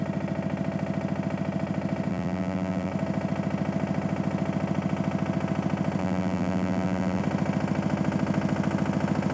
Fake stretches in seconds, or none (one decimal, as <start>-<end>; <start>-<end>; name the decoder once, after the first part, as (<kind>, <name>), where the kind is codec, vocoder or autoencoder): 2.1-2.9 (vocoder, BigVGAN v2); 6.0-7.2